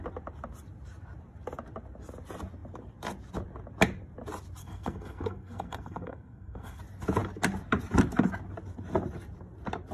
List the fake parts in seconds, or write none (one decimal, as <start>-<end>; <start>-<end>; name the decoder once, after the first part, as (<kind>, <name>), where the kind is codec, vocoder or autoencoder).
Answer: 4.6-6.8 (codec, SNAC)